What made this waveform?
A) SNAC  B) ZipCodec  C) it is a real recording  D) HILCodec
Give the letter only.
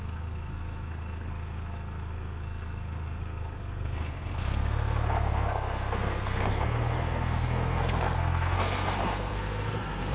A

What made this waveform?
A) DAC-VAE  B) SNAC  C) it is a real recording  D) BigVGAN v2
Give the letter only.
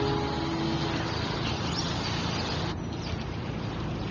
C